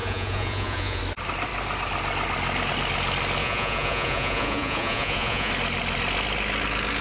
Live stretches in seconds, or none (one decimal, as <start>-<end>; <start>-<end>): 1.0-3.4; 5.5-7.0